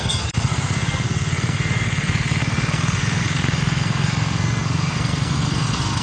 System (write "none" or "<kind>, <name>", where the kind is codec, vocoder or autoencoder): codec, SNAC